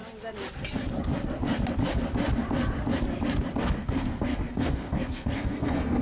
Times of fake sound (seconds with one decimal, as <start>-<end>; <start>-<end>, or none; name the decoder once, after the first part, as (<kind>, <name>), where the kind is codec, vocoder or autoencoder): 3.6-6.0 (codec, SNAC)